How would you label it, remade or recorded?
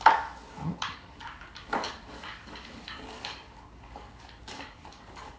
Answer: remade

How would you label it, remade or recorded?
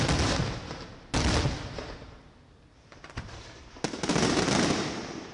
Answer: recorded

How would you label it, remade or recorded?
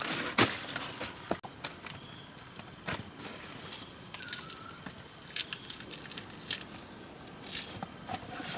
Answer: recorded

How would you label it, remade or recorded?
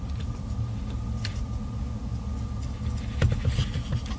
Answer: recorded